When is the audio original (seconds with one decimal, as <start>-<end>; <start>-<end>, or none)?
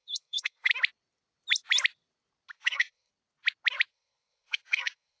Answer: 0.7-2.5; 3.1-3.9